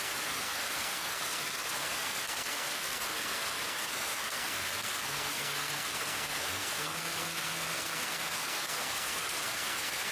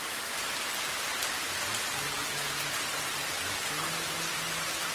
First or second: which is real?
second